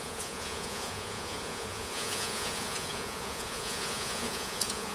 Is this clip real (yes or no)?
no